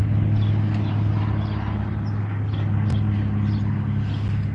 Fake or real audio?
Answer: real